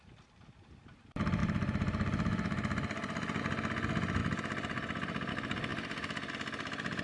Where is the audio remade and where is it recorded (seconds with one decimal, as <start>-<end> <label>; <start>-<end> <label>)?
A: 0.0-1.4 recorded; 1.4-3.4 remade; 3.4-7.0 recorded